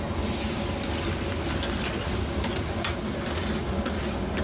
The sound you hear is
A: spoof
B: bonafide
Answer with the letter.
B